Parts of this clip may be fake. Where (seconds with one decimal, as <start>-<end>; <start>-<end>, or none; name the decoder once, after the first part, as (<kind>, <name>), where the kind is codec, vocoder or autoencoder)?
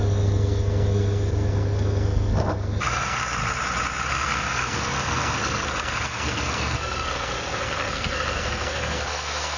0.0-3.4 (codec, SNAC); 4.1-9.6